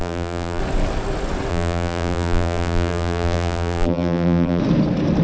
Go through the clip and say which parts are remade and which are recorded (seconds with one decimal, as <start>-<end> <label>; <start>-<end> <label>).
0.0-0.6 remade; 0.6-1.5 recorded; 1.5-4.6 remade; 4.6-5.2 recorded